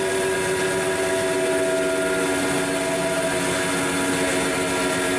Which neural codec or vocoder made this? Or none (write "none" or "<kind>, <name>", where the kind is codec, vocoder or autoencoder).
none